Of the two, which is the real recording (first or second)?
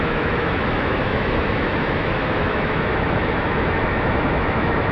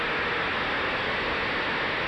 second